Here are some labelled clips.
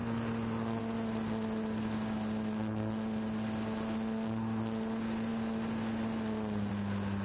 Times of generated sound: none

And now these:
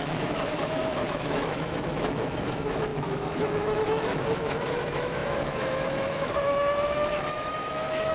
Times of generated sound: 0.0-8.1 (autoencoder, DAC-VAE)

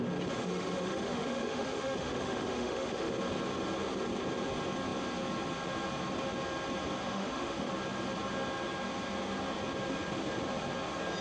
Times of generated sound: 0.4-3.1 (autoencoder, DAC-VAE); 7.0-7.7

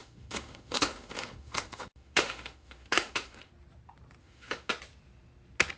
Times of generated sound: 0.0-3.5 (autoencoder, DAC-VAE); 4.2-4.7